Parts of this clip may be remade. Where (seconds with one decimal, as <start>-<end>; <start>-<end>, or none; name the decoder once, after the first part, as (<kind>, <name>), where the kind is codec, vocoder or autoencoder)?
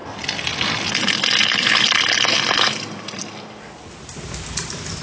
none